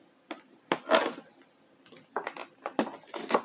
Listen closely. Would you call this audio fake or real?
real